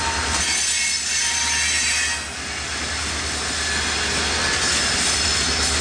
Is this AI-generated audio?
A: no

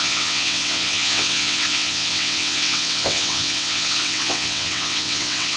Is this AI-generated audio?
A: yes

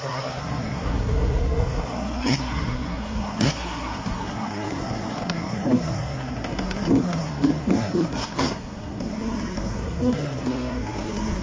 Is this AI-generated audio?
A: yes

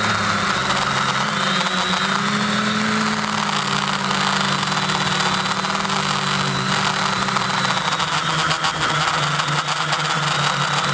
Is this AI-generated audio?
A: no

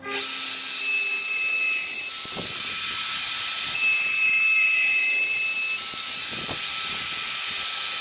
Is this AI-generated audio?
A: no